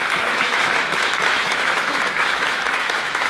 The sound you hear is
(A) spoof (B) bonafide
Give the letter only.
A